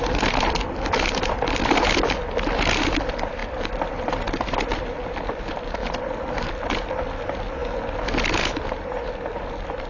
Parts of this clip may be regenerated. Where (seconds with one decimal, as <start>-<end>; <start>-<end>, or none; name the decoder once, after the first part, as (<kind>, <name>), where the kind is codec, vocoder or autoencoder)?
0.0-1.6 (vocoder, BigVGAN v2); 2.8-3.4; 4.2-5.8; 7.0-7.6; 8.3-9.9